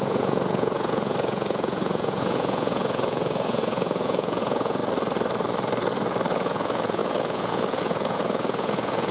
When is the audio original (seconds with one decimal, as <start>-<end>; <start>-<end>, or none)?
4.8-6.3